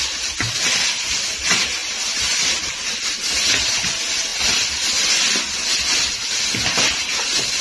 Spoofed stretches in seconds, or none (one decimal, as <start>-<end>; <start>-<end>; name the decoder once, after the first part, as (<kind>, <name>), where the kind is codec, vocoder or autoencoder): none